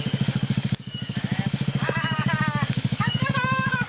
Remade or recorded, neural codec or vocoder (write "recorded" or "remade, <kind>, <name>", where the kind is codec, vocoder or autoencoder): remade, codec, DAC